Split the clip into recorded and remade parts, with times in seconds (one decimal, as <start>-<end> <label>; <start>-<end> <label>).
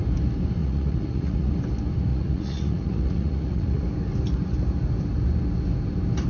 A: 0.0-0.6 recorded; 0.6-1.5 remade; 1.5-2.1 recorded; 2.1-3.8 remade; 3.8-6.3 recorded